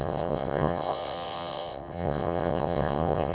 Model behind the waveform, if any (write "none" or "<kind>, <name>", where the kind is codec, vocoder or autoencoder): vocoder, WaveNeXt